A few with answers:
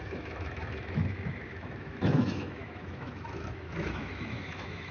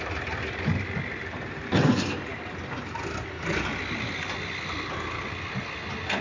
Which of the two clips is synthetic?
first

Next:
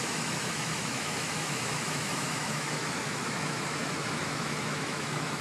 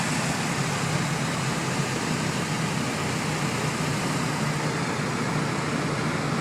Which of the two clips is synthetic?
first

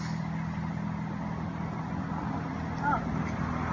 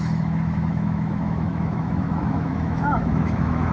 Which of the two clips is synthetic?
second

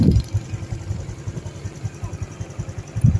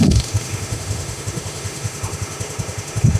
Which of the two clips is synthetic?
second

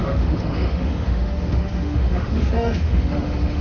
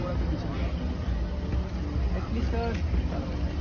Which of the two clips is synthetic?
first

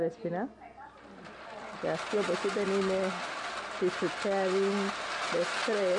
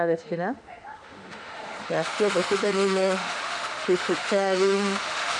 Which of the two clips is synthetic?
second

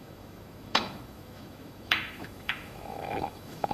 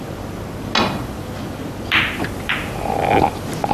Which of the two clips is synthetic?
first